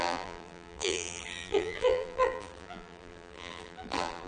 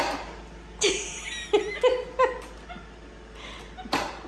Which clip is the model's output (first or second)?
first